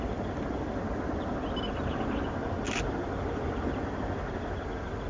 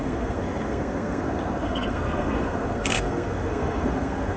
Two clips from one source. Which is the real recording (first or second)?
first